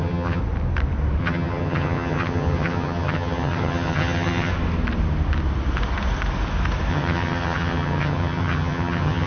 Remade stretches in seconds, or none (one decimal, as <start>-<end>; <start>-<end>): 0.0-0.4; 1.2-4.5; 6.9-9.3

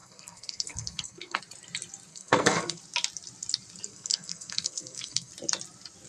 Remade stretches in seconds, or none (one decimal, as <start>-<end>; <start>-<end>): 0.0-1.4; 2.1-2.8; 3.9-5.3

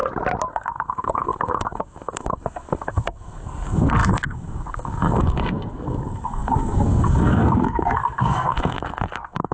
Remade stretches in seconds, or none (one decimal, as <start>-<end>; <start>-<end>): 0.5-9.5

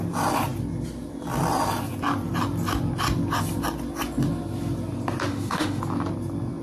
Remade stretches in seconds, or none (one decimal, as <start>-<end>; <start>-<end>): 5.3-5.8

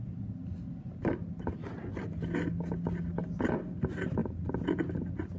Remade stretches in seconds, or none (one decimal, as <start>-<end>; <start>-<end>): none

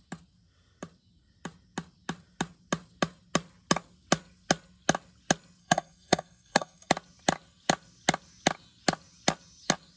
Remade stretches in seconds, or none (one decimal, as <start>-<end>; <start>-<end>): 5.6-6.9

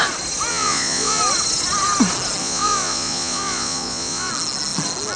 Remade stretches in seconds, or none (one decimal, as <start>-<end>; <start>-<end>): 0.5-1.2; 2.4-4.3

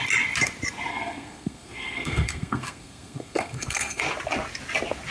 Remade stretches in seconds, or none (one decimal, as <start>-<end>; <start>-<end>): 0.9-4.0